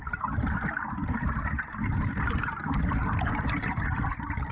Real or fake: fake